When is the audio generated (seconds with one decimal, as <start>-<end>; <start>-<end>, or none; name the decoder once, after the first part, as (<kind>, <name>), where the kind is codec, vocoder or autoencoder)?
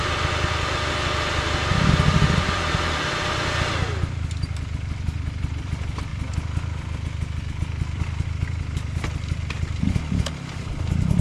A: 1.7-4.0 (vocoder, BigVGAN v2)